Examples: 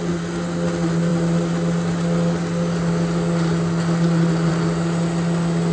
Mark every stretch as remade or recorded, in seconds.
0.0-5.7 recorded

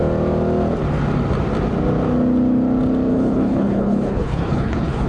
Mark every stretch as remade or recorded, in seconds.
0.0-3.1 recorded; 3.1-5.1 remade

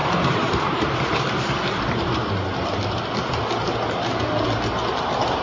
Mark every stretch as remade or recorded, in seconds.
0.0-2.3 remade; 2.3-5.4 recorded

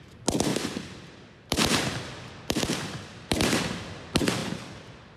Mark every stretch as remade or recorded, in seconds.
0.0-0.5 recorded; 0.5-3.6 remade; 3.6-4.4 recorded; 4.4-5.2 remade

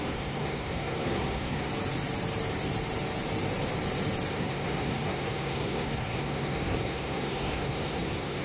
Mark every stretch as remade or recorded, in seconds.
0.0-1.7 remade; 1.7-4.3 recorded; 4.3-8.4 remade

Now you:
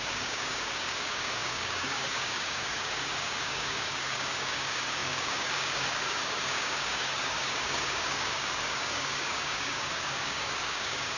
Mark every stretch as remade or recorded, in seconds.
0.0-11.2 remade